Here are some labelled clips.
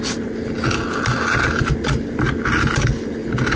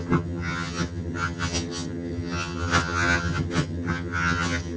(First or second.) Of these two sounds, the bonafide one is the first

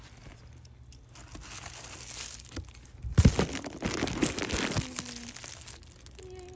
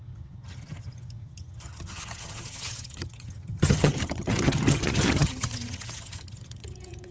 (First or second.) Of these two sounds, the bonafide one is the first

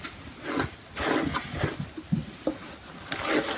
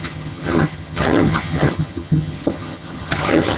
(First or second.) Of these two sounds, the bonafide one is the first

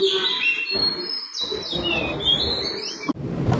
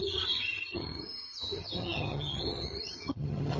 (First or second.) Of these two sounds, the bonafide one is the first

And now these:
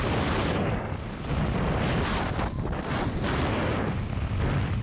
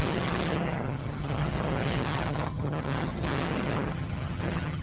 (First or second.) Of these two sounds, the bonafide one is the first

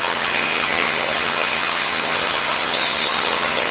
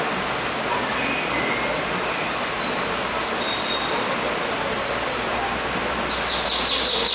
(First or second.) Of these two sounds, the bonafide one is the second